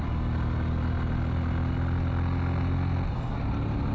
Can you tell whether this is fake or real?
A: real